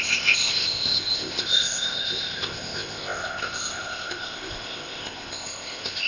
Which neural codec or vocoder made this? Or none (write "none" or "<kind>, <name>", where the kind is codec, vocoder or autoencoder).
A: codec, ZipCodec